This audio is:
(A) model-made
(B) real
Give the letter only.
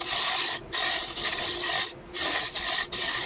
B